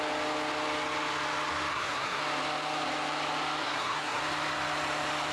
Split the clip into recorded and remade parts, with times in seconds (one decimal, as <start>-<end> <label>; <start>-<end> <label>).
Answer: 0.0-1.7 recorded; 1.7-2.2 remade; 2.2-3.6 recorded; 3.6-4.2 remade; 4.2-5.3 recorded